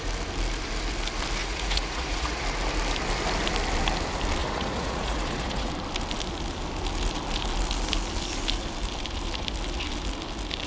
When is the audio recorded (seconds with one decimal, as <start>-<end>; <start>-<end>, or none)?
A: 0.0-1.4; 2.4-4.4; 5.7-10.7